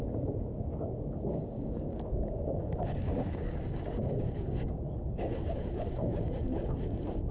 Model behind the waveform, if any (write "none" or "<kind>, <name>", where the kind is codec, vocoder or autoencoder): codec, DAC